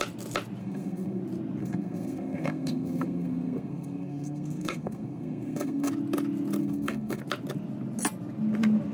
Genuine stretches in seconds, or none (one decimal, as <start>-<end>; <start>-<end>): 0.0-0.6; 1.2-1.6; 5.9-6.6; 7.2-8.9